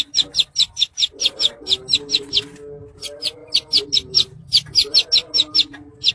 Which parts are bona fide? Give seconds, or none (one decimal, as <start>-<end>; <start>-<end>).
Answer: 0.0-3.4; 4.9-6.1